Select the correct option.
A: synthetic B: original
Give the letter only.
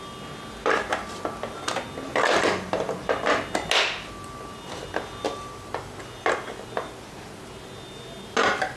B